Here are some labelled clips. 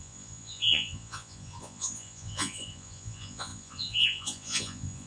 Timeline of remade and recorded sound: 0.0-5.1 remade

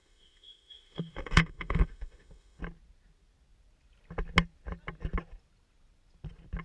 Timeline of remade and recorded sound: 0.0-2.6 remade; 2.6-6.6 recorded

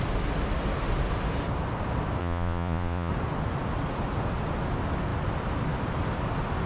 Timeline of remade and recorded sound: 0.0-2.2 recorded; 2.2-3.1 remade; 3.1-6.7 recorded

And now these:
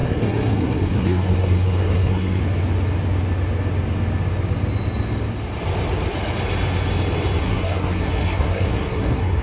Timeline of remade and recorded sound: 0.0-2.4 remade; 2.4-7.4 recorded; 7.4-9.4 remade